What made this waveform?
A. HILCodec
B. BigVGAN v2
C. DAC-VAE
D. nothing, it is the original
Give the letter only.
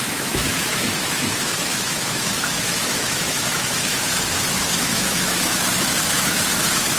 C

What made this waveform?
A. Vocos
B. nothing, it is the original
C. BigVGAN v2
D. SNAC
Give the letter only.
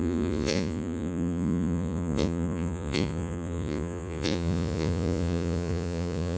A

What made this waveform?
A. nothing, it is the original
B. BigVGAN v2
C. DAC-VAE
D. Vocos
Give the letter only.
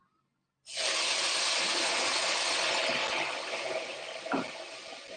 A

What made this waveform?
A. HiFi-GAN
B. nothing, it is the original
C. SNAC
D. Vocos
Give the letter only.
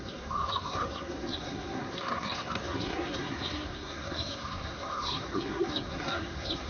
C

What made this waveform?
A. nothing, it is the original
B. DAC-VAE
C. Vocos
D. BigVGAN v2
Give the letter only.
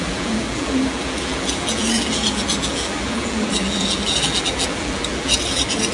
D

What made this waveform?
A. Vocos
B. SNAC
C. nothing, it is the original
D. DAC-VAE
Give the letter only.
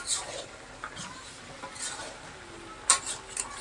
C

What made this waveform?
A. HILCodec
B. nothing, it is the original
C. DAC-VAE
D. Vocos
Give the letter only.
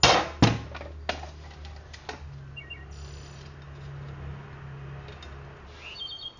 B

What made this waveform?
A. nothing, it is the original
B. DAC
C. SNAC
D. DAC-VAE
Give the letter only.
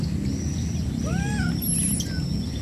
A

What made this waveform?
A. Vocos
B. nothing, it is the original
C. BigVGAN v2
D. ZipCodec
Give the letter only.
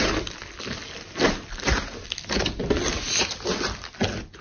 B